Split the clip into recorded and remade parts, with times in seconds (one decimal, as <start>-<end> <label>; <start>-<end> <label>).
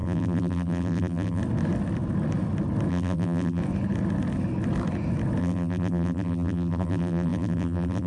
0.0-1.4 remade; 1.4-2.9 recorded; 2.9-3.6 remade; 3.6-5.4 recorded; 5.4-8.1 remade